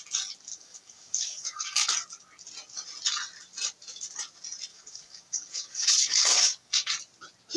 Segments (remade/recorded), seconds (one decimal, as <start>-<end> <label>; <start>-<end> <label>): 0.0-0.5 recorded; 0.5-1.9 remade; 1.9-4.7 recorded; 4.7-6.9 remade; 6.9-7.6 recorded